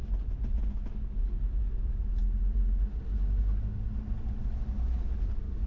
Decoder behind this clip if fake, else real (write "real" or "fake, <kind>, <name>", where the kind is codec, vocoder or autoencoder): real